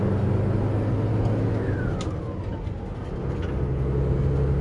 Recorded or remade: recorded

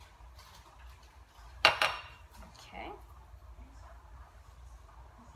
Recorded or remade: recorded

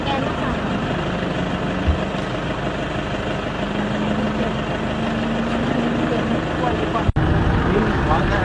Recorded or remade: recorded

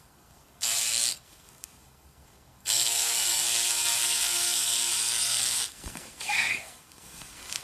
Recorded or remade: remade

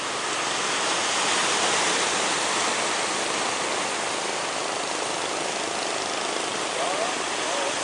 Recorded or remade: recorded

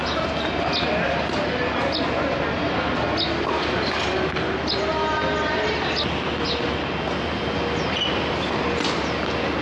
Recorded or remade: recorded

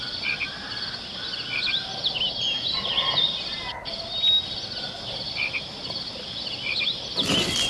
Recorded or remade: recorded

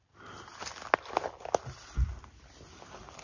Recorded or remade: recorded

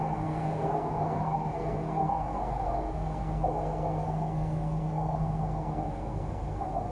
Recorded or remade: remade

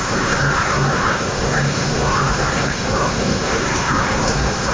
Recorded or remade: remade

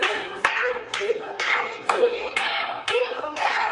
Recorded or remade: remade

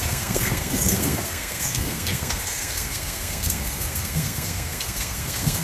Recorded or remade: remade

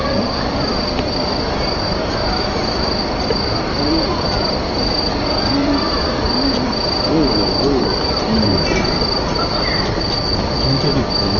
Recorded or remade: recorded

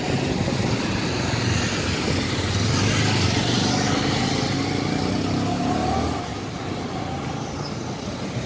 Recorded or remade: recorded